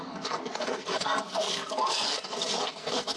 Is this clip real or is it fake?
fake